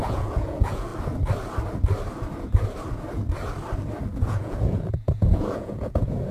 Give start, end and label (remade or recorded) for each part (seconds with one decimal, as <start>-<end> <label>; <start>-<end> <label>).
0.0-0.9 remade; 0.9-4.0 recorded; 4.0-6.3 remade